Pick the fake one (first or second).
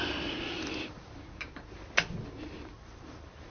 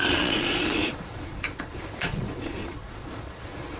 second